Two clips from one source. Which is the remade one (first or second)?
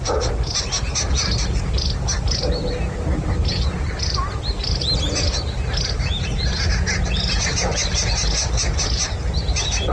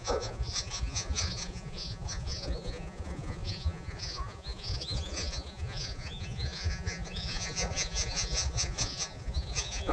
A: second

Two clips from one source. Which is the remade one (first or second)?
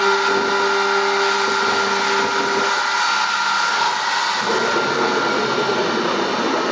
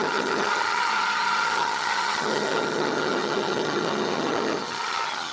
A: second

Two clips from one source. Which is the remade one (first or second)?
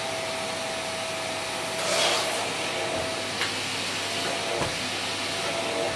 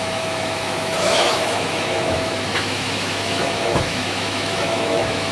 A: second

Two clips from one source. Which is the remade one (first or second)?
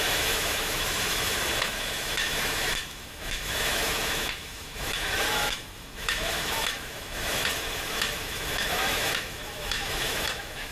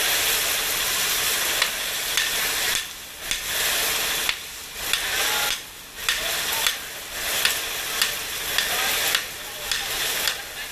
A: first